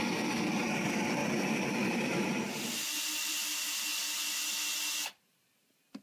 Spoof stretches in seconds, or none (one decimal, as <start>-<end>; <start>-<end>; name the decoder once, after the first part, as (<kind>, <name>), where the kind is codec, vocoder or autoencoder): 0.0-3.9 (vocoder, BigVGAN v2); 5.2-6.0